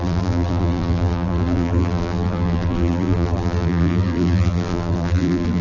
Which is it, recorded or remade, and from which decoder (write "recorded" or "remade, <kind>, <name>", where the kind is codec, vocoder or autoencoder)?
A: remade, vocoder, BigVGAN v2